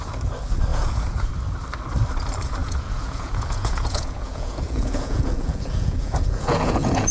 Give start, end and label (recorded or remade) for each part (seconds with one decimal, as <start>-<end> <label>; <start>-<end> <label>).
0.0-0.7 recorded; 0.7-1.3 remade; 1.3-2.6 recorded; 2.6-7.1 remade